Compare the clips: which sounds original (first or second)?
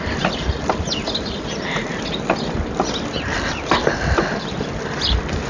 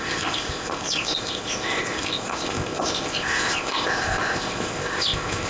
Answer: first